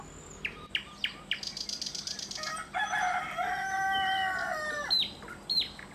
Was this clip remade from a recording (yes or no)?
no